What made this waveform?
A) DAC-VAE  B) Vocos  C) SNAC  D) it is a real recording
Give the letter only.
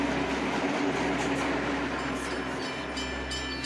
D